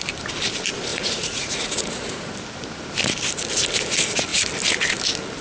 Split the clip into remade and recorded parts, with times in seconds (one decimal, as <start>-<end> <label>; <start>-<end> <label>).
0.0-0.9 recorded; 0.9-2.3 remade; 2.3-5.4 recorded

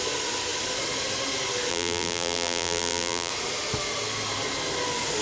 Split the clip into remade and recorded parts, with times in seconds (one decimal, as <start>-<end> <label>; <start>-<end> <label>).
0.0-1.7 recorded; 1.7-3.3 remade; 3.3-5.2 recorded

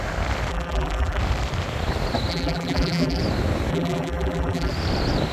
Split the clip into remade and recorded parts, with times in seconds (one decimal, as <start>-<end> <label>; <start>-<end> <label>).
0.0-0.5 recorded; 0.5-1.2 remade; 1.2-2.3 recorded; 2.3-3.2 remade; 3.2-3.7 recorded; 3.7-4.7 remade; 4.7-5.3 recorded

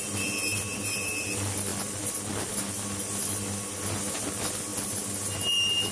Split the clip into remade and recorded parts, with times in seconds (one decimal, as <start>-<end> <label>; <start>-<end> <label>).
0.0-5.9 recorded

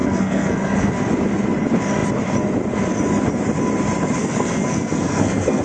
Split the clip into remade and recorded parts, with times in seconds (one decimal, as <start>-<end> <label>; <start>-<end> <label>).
0.0-0.9 remade; 0.9-4.2 recorded; 4.2-5.6 remade

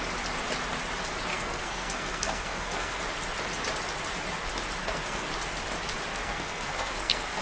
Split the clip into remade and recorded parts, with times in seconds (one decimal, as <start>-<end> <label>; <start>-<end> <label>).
0.0-1.3 recorded; 1.3-3.0 remade; 3.0-4.8 recorded; 4.8-5.3 remade; 5.3-6.1 recorded; 6.1-7.4 remade